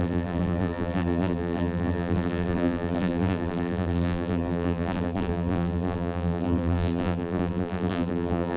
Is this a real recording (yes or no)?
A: no